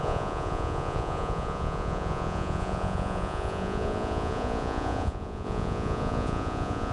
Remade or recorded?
remade